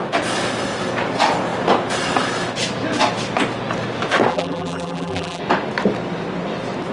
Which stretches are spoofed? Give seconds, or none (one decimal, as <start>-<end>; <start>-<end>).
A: 4.3-5.4